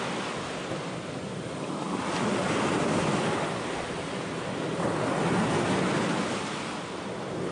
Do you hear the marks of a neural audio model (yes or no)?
no